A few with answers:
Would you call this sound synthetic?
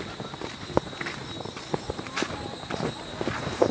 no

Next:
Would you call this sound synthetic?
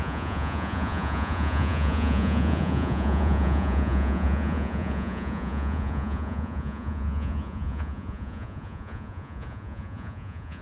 yes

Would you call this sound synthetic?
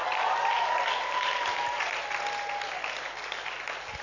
no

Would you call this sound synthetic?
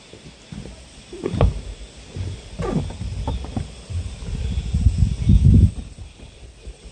no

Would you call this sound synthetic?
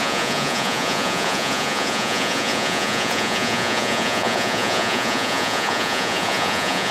yes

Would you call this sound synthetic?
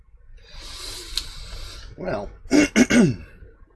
no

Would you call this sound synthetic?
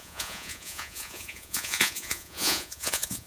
yes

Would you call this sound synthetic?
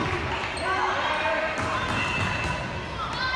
no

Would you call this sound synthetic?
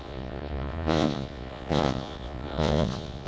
yes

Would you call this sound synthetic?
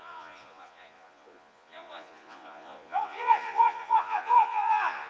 yes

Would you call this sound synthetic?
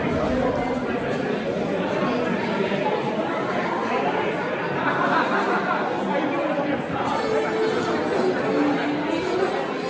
no